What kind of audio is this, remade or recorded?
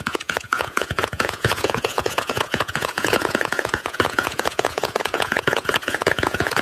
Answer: remade